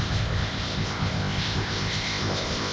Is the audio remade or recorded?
remade